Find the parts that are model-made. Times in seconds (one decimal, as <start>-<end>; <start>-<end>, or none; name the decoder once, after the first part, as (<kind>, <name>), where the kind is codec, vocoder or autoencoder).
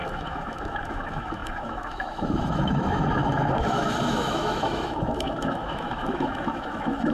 0.0-7.1 (autoencoder, DAC-VAE)